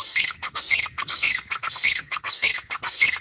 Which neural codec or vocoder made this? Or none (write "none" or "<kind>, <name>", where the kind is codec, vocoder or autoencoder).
codec, SNAC